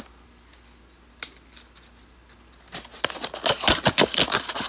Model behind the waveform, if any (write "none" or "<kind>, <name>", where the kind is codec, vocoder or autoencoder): none